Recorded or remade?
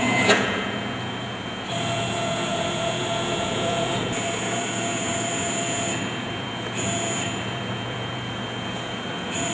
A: remade